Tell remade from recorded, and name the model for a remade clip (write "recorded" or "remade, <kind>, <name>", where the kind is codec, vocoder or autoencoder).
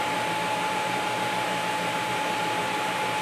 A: remade, vocoder, BigVGAN v2